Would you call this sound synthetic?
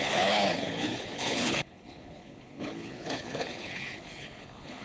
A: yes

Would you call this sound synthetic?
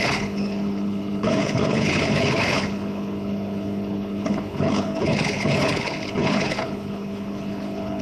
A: yes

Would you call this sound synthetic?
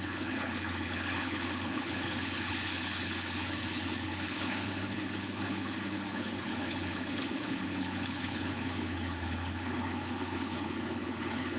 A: yes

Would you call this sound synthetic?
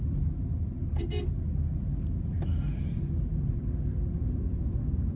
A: no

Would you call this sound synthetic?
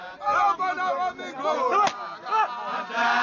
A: no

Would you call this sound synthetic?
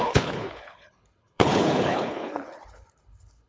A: yes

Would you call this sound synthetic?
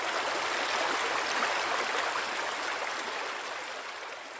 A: no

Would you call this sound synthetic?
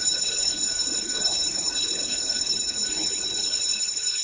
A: yes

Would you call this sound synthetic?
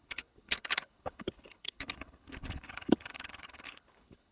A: yes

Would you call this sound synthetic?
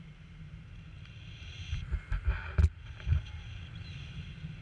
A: no